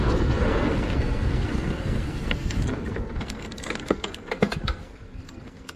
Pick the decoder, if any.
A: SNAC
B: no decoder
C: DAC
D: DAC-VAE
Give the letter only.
A